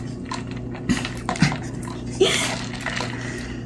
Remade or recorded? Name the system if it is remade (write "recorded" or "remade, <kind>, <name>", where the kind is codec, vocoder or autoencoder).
recorded